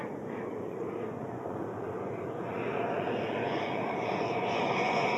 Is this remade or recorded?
remade